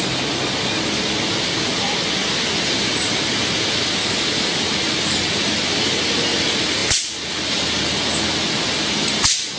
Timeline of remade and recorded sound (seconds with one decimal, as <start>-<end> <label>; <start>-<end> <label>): 0.0-9.6 recorded